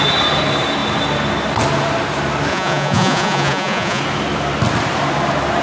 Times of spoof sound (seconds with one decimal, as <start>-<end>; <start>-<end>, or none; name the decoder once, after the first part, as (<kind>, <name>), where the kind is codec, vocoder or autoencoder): 2.5-4.0 (vocoder, Vocos)